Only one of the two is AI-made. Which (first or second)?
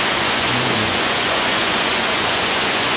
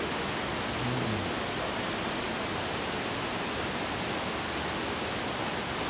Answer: first